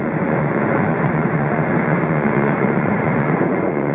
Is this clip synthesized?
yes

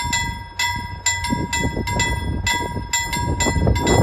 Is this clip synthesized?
no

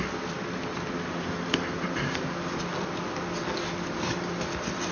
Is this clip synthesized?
no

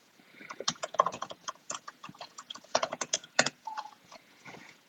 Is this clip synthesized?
yes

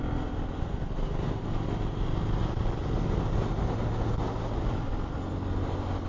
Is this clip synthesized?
no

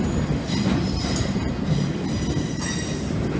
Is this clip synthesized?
no